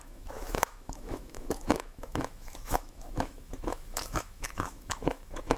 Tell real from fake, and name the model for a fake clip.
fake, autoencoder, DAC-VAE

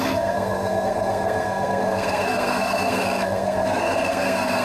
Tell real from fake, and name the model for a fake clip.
fake, codec, SNAC